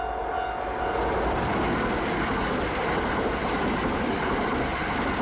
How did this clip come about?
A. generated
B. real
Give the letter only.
B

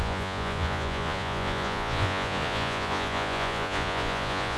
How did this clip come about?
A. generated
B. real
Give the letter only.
A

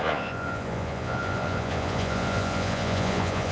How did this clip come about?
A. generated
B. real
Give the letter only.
A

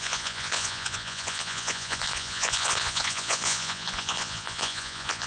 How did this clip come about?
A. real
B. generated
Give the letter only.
B